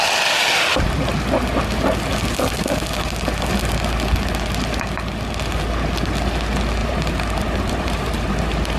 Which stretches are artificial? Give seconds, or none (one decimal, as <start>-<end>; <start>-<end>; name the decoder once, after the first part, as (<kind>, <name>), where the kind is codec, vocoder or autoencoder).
6.8-8.3 (vocoder, BigVGAN v2)